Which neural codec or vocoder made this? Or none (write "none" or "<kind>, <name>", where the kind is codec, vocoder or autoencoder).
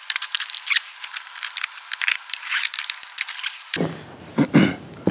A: vocoder, BigVGAN v2